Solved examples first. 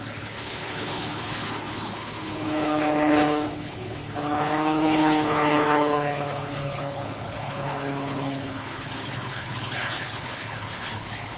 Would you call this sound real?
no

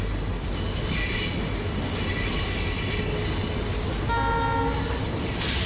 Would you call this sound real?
yes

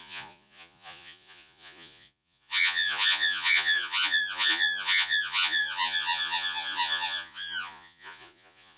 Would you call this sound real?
no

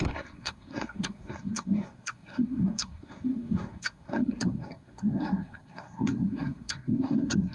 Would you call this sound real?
no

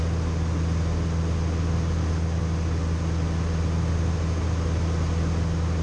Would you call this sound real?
yes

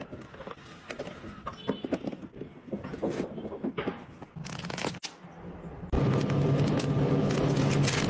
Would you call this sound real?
yes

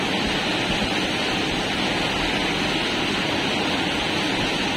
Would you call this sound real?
yes